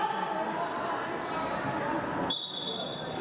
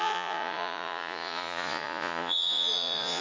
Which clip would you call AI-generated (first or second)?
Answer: second